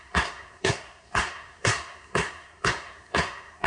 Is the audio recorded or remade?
remade